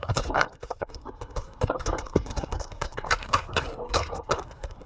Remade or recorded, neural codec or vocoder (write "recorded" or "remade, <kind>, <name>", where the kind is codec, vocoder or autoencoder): remade, codec, SNAC